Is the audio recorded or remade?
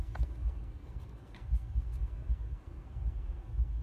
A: remade